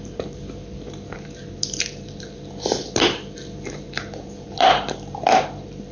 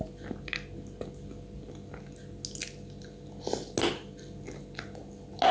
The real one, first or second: second